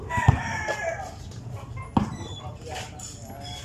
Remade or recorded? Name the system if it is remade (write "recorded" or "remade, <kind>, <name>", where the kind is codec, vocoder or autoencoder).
recorded